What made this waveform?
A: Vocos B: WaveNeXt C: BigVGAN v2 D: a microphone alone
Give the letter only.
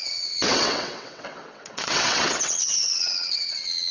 B